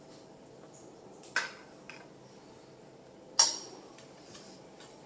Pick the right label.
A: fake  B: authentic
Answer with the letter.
B